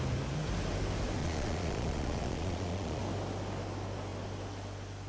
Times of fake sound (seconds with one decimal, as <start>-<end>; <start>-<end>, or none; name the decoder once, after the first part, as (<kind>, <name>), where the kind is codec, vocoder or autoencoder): 1.2-3.0 (vocoder, Vocos)